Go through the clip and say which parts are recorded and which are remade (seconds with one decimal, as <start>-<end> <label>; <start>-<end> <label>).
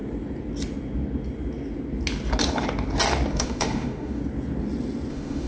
0.0-3.3 recorded; 3.3-4.2 remade; 4.2-5.1 recorded; 5.1-5.5 remade